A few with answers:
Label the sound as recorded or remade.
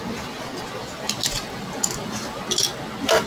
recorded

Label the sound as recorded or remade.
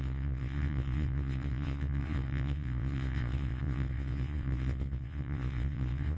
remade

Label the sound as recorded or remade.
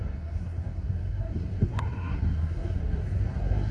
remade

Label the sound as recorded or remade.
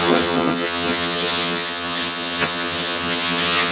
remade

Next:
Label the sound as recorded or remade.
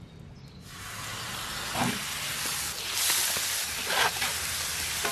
recorded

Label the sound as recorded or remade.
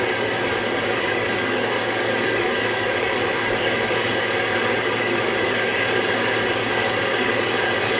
remade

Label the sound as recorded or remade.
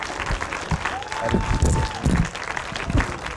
recorded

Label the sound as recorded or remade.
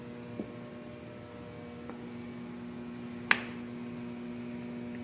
recorded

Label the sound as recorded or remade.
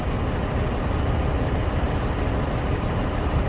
recorded